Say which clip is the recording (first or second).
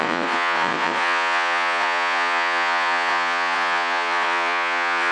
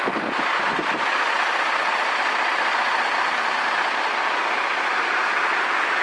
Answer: second